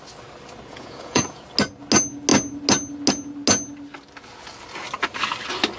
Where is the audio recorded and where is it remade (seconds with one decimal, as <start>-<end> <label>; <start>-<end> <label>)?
0.0-0.7 recorded; 0.7-1.4 remade; 1.4-5.8 recorded